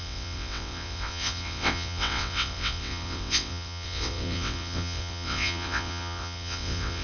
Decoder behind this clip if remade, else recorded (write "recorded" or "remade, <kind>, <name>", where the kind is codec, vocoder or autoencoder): remade, vocoder, WaveNeXt